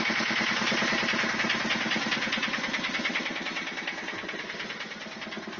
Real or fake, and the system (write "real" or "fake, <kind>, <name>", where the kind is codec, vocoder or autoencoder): real